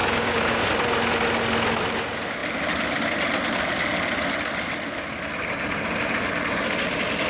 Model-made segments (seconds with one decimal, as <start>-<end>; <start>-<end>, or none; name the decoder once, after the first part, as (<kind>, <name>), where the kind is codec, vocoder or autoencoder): 0.0-0.7 (codec, DAC)